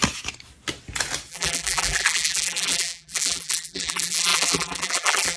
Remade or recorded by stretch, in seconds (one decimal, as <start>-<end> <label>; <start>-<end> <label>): 0.0-1.3 recorded; 1.3-5.4 remade